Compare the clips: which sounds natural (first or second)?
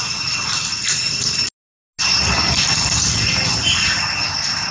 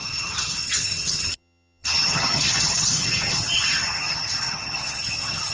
first